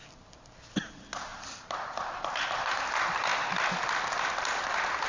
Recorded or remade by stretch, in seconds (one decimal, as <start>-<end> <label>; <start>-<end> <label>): 0.0-1.3 recorded; 1.3-2.8 remade; 2.8-5.1 recorded

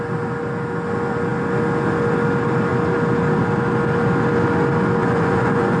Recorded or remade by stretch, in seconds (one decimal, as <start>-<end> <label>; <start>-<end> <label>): 0.0-5.0 recorded; 5.0-5.8 remade

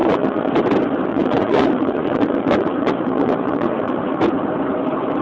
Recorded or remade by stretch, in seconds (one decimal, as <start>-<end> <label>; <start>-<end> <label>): 0.0-0.5 remade; 0.5-1.1 recorded; 1.1-4.2 remade; 4.2-5.2 recorded